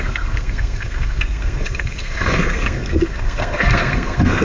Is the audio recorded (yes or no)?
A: no